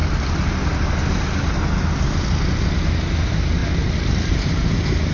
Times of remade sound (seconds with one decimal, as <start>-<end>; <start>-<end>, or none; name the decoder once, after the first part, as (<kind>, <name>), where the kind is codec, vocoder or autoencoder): none